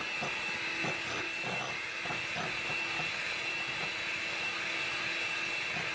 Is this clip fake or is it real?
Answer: real